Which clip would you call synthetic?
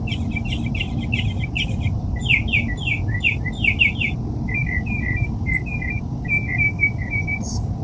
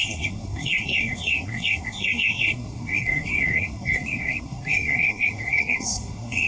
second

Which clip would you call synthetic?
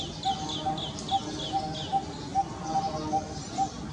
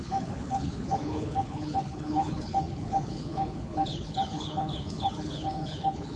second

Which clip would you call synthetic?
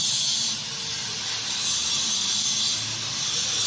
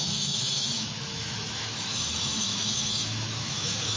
second